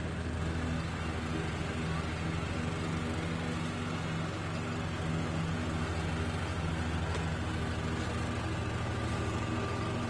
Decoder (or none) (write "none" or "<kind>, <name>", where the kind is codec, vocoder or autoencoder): none